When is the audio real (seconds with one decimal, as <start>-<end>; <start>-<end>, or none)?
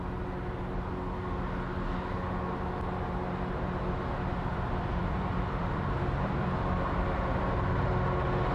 0.0-4.5; 7.9-8.5